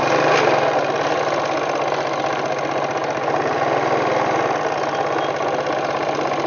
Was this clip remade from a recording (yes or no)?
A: no